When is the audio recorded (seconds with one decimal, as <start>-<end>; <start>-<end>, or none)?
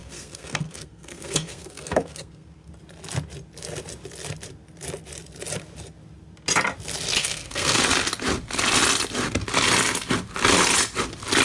2.7-7.2; 7.8-11.4